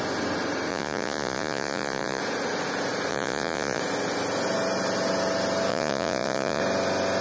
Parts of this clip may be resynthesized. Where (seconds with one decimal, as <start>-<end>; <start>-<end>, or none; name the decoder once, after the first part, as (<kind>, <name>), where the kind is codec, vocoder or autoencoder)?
0.7-2.2 (vocoder, Vocos); 3.1-3.8; 5.7-6.6